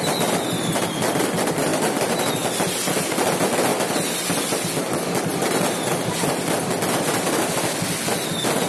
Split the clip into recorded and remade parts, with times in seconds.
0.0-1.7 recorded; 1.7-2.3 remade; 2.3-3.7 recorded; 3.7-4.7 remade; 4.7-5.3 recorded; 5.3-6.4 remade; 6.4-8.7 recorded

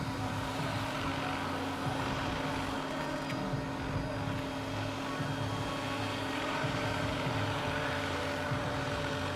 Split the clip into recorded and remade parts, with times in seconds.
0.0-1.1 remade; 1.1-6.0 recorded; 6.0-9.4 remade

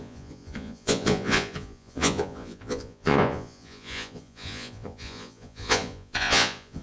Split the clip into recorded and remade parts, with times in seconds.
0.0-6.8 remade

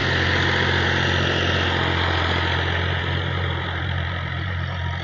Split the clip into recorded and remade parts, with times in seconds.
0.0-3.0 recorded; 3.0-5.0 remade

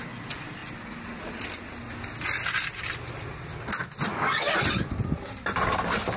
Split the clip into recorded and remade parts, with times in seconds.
0.0-6.2 recorded

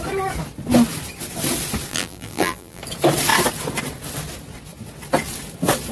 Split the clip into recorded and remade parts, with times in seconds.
0.0-1.9 recorded; 1.9-2.8 remade; 2.8-5.9 recorded

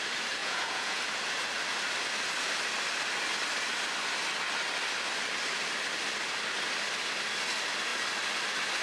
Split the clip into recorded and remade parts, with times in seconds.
0.0-0.4 recorded; 0.4-1.0 remade; 1.0-8.8 recorded